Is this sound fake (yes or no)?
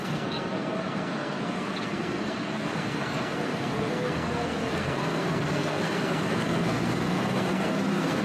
yes